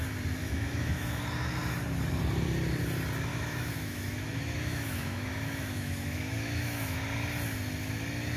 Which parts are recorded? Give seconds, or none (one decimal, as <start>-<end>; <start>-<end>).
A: 0.0-0.4; 1.2-3.3; 7.0-8.4